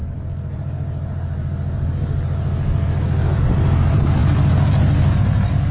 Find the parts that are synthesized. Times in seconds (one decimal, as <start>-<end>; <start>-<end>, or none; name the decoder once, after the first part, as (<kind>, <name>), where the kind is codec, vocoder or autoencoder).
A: none